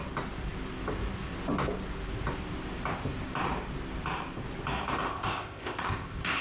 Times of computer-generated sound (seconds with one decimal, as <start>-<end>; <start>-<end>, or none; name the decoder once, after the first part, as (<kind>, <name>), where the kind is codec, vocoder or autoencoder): 5.1-6.4 (codec, ZipCodec)